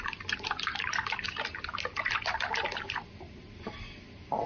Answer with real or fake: real